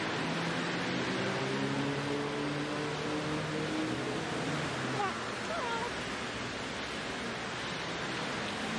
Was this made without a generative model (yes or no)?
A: yes